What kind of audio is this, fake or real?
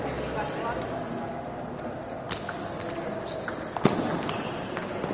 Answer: real